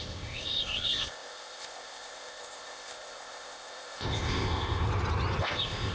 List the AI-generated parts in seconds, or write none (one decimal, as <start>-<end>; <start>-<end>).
0.0-4.9; 5.4-5.9

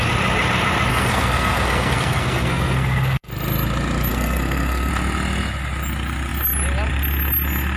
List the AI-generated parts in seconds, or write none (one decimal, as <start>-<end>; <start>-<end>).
0.9-3.3; 4.1-4.9

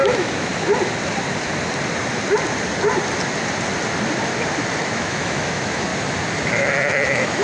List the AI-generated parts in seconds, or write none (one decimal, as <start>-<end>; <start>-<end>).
0.0-0.5; 4.8-5.9; 6.5-7.4

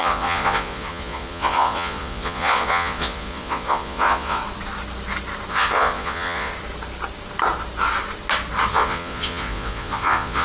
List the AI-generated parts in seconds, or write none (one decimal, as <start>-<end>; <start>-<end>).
0.0-4.4; 5.5-6.5; 8.7-10.4

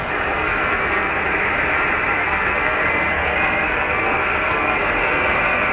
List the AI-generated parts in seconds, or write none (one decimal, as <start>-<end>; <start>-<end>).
0.4-1.1; 2.2-5.7

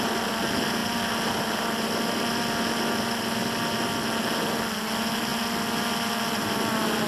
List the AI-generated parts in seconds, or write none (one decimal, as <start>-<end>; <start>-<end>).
none